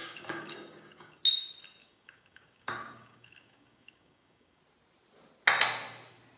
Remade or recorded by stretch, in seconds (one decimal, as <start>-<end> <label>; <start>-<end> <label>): 0.0-1.2 remade; 1.2-1.8 recorded; 1.8-4.6 remade; 4.6-6.4 recorded